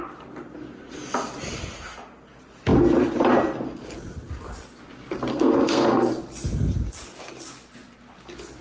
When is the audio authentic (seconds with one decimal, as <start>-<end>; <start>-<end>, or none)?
0.0-5.3; 6.1-8.6